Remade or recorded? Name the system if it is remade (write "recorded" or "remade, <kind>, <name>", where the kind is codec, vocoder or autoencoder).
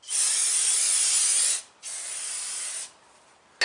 recorded